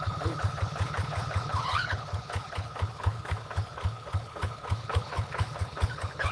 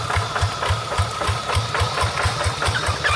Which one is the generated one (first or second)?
first